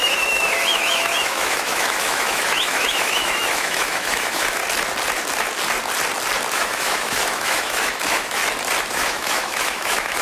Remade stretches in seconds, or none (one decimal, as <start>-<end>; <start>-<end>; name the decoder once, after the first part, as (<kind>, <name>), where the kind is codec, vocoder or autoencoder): 0.0-4.6 (autoencoder, DAC-VAE); 6.5-8.4; 8.9-10.2